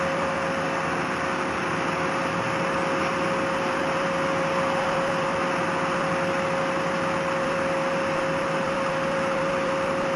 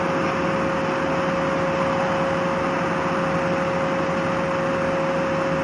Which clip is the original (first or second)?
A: second